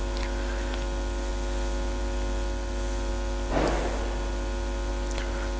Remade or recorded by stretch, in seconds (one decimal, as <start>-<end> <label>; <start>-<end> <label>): 0.0-5.6 recorded